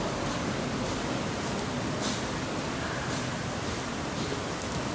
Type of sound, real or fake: real